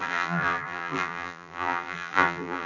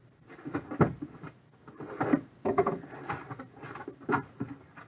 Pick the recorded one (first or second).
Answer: second